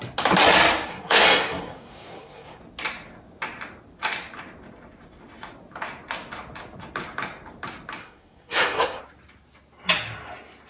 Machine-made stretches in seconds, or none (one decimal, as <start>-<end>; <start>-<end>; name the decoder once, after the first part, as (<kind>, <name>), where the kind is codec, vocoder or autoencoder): 0.9-2.6 (codec, SNAC); 8.0-9.0